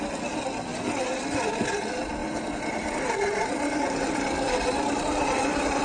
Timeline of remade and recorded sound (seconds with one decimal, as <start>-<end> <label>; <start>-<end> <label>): 0.0-0.7 recorded; 0.7-1.4 remade; 1.4-2.2 recorded; 2.2-5.8 remade